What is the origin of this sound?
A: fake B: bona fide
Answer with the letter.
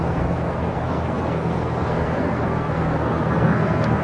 A